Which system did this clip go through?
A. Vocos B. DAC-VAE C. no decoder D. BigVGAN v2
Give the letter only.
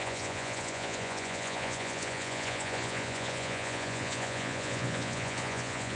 A